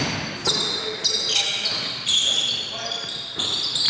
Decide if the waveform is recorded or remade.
recorded